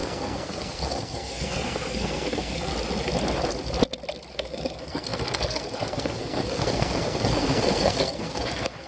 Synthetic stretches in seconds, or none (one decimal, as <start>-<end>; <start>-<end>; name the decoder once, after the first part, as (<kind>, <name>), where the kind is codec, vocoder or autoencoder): 0.0-2.7 (codec, SNAC); 4.3-8.9